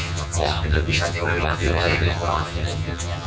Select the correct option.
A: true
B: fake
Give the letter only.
B